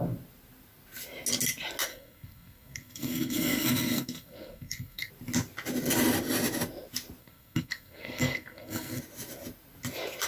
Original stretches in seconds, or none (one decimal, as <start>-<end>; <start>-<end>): 0.0-1.9; 5.1-7.2; 9.0-10.3